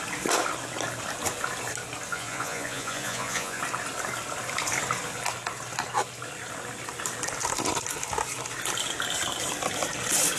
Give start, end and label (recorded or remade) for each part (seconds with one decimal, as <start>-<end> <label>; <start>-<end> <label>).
0.0-2.1 recorded; 2.1-3.6 remade; 3.6-10.4 recorded